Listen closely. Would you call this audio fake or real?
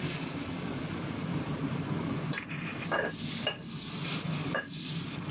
real